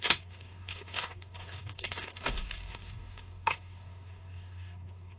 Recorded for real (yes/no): no